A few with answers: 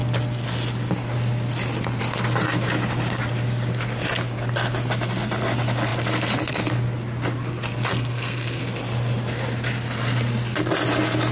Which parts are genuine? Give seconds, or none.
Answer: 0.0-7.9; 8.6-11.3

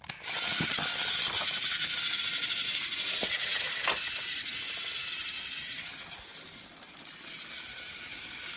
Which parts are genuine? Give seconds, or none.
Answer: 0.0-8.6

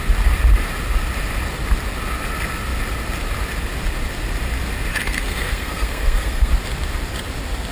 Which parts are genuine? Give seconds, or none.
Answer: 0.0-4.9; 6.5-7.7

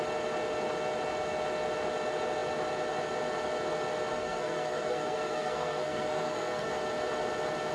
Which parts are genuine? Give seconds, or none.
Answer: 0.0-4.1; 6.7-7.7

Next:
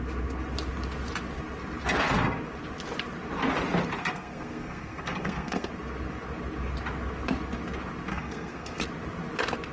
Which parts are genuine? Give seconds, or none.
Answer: 0.0-4.0; 5.7-8.1; 8.8-9.7